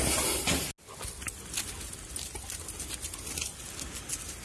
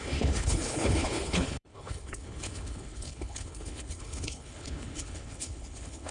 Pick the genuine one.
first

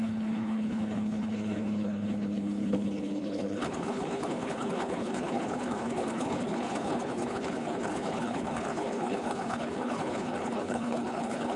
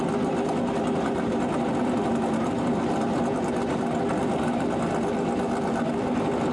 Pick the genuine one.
second